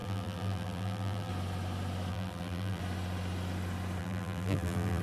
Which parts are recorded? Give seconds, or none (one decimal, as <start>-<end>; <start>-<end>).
1.3-2.1; 2.8-4.0